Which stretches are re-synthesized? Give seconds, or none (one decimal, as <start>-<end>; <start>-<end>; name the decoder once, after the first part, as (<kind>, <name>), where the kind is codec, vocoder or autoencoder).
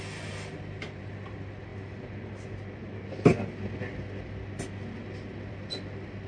none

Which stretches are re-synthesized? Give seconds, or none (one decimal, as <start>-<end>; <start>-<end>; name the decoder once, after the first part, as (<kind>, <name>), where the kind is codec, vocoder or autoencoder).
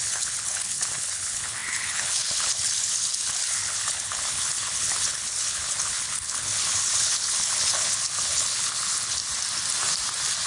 0.0-9.2 (codec, HILCodec)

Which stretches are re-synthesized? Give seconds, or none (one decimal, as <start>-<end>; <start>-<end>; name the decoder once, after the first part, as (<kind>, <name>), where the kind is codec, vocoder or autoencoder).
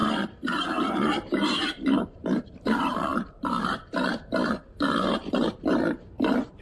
0.0-6.6 (vocoder, BigVGAN v2)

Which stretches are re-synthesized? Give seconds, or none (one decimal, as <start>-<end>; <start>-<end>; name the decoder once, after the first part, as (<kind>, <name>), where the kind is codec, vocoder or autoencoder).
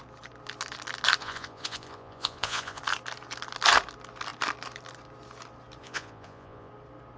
1.2-2.8 (vocoder, Vocos); 5.8-6.7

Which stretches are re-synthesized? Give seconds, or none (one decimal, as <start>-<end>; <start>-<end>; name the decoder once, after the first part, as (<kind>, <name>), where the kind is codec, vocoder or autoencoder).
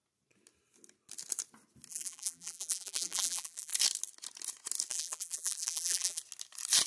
1.9-3.7 (vocoder, BigVGAN v2); 4.9-6.2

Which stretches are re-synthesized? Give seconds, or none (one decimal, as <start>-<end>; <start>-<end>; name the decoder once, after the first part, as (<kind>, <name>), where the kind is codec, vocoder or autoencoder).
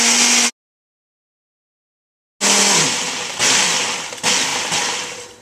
none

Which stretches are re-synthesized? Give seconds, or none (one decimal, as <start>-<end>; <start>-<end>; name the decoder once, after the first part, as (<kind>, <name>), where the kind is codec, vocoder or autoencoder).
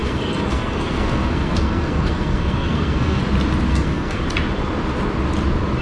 0.0-3.2 (codec, SNAC); 3.7-4.2